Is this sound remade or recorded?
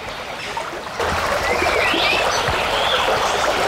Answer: recorded